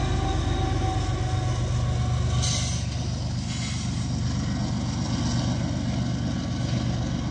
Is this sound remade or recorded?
recorded